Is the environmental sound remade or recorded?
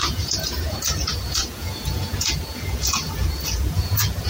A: remade